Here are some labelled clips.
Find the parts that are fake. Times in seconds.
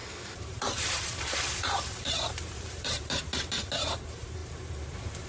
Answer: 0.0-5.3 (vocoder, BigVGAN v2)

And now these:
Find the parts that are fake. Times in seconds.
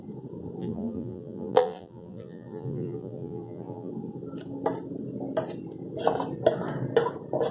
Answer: 0.6-3.9 (vocoder, BigVGAN v2)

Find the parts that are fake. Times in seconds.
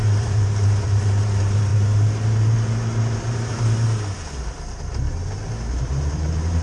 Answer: 0.0-1.7 (vocoder, BigVGAN v2); 5.7-6.6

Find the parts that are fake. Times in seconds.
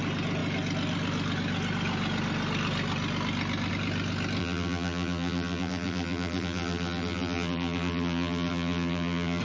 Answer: 4.4-9.4 (vocoder, BigVGAN v2)